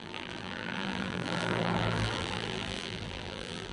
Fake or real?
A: fake